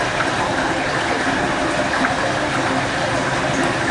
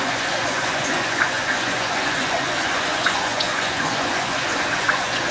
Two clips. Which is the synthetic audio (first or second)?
second